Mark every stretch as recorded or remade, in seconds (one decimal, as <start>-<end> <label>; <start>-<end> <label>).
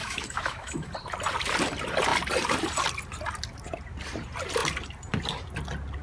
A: 0.0-0.9 remade; 0.9-6.0 recorded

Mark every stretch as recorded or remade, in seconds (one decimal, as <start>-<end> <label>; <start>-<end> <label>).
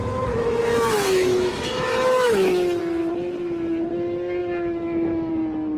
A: 0.0-2.8 remade; 2.8-4.4 recorded; 4.4-5.3 remade; 5.3-5.8 recorded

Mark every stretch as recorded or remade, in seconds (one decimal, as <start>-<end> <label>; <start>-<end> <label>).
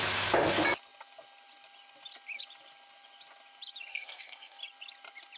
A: 0.0-3.9 recorded; 3.9-4.6 remade; 4.6-5.4 recorded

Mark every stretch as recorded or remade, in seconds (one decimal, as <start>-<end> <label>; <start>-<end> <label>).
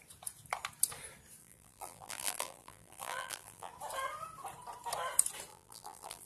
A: 0.0-1.4 recorded; 1.4-3.7 remade; 3.7-5.5 recorded; 5.5-6.3 remade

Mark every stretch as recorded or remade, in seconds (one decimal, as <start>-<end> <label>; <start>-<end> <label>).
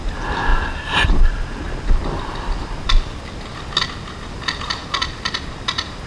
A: 0.0-6.1 recorded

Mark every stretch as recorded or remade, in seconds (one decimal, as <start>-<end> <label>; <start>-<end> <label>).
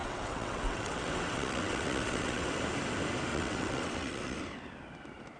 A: 0.0-2.6 remade; 2.6-3.3 recorded; 3.3-4.4 remade; 4.4-5.4 recorded